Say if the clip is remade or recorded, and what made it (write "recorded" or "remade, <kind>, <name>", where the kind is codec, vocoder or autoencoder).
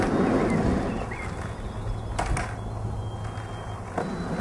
recorded